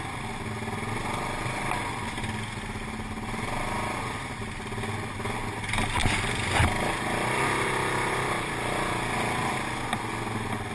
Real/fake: real